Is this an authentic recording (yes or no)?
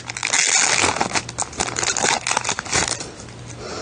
yes